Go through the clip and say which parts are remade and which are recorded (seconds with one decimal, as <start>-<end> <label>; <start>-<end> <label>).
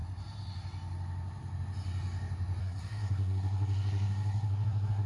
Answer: 0.0-2.6 recorded; 2.6-5.1 remade